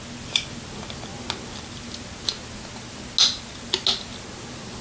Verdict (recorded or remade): recorded